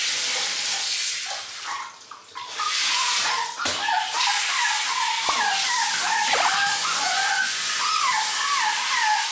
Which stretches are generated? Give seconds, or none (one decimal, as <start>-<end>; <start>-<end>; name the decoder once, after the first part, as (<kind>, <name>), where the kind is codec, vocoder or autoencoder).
6.8-8.0 (vocoder, Vocos)